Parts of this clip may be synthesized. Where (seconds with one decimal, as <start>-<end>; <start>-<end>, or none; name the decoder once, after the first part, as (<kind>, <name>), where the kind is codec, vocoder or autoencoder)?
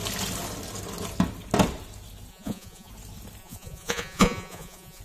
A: 2.3-2.9 (vocoder, Vocos); 3.4-5.0